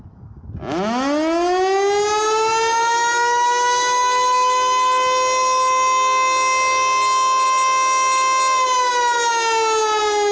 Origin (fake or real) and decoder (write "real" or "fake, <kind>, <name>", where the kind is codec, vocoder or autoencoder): real